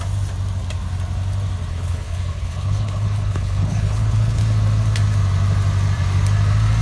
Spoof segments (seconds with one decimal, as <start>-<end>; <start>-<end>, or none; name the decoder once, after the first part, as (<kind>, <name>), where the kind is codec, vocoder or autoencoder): 1.7-4.4 (codec, HILCodec)